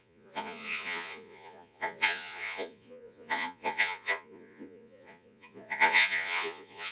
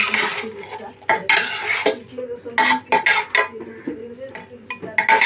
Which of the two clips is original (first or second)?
second